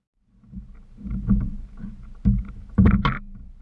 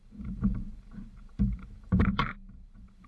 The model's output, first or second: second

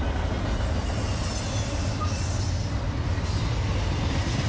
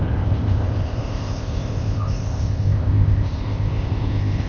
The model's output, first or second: second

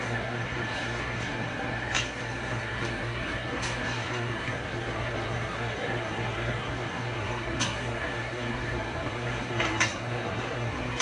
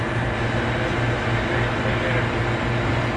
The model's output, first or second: first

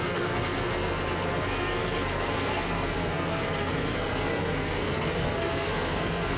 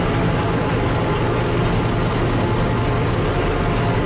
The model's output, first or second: first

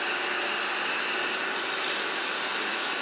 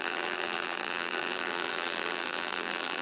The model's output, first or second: second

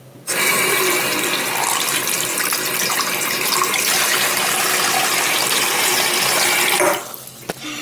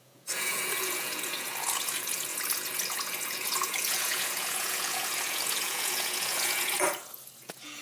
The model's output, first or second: second